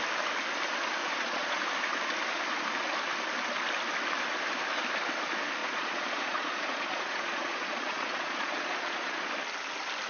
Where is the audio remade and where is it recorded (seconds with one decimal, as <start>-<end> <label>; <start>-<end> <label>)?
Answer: 0.0-1.0 recorded; 1.0-1.6 remade; 1.6-5.6 recorded; 5.6-9.3 remade; 9.3-10.1 recorded